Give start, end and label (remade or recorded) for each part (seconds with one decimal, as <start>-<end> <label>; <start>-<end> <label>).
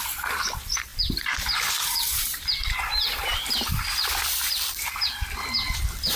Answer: 0.0-0.9 recorded; 0.9-2.9 remade; 2.9-6.2 recorded